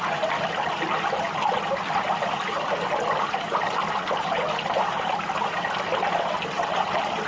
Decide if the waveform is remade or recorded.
recorded